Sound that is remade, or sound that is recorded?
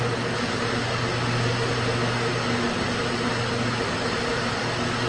recorded